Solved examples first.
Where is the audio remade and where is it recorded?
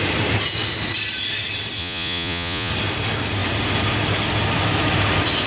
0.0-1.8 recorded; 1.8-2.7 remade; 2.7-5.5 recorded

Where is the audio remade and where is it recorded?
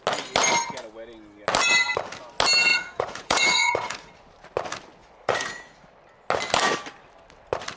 0.0-2.7 recorded; 2.7-4.1 remade; 4.1-5.0 recorded; 5.0-5.9 remade; 5.9-7.8 recorded